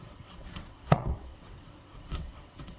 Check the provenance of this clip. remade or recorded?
remade